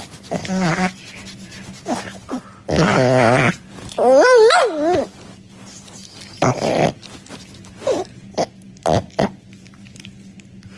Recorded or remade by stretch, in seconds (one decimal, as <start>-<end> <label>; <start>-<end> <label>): 0.0-10.8 recorded